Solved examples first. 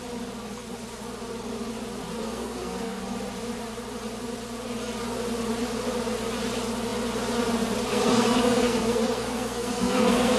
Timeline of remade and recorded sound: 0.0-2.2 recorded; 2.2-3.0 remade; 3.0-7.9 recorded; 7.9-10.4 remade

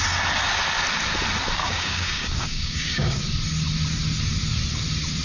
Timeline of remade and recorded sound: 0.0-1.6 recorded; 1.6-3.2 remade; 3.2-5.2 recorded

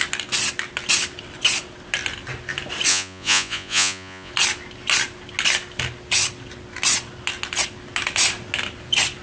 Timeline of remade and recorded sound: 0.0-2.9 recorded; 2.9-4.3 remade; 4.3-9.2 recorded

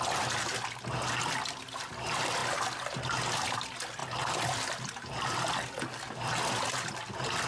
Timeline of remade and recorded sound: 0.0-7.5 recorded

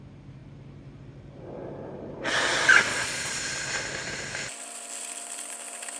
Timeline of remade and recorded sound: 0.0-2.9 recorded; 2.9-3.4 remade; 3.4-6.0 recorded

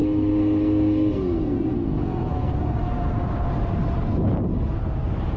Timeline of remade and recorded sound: 0.0-3.2 remade; 3.2-5.4 recorded